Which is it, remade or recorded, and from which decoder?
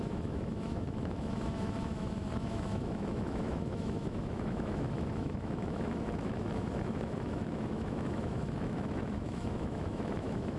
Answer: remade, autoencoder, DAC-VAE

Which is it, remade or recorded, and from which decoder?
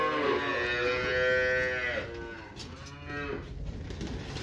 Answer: recorded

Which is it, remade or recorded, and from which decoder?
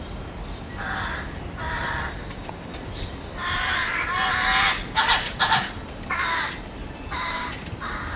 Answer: recorded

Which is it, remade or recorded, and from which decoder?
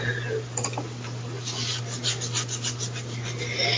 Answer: recorded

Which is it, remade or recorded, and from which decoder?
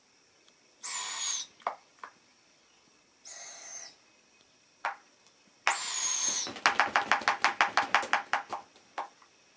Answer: recorded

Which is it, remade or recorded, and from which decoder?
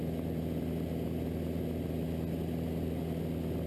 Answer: recorded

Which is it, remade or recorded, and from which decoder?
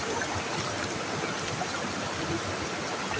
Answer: recorded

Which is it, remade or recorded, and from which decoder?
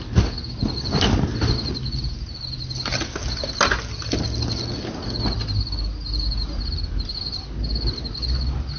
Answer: recorded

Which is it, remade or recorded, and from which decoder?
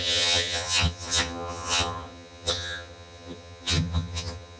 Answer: remade, vocoder, HiFi-GAN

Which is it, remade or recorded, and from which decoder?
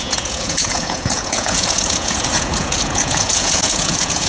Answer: remade, vocoder, Vocos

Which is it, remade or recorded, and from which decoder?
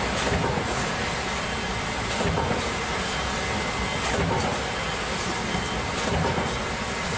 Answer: recorded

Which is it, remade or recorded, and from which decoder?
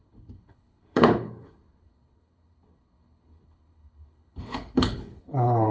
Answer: remade, codec, HILCodec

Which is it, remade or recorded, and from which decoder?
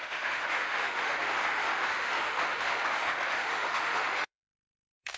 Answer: remade, autoencoder, DAC-VAE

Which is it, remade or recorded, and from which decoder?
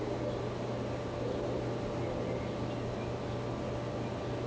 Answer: recorded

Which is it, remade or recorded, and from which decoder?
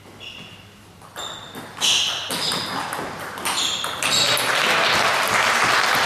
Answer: recorded